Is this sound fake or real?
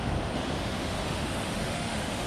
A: fake